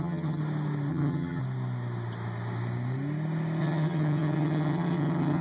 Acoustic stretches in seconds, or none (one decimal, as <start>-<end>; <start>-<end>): 0.4-0.9; 1.4-3.6